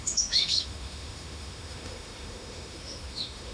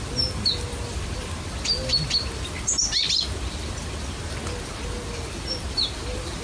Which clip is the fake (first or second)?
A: first